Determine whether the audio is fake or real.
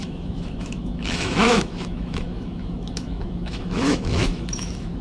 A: fake